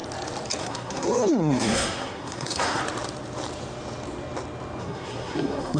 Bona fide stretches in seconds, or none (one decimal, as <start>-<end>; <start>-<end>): 0.0-0.6; 2.8-4.8

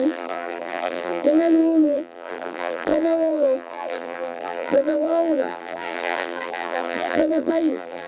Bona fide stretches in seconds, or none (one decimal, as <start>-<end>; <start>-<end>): none

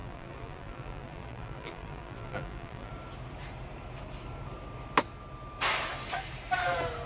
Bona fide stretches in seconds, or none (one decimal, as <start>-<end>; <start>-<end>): 2.9-7.1

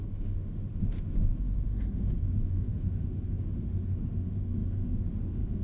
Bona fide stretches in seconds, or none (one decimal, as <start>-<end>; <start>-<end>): none

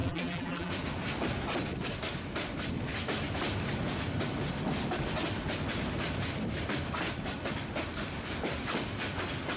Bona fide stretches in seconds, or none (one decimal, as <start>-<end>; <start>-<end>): 0.7-9.6